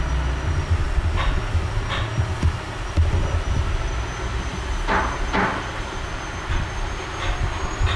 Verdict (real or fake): real